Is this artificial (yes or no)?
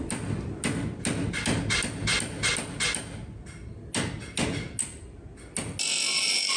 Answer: no